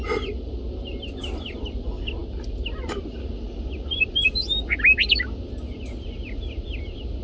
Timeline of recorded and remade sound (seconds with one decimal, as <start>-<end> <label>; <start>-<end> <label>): 0.0-7.2 recorded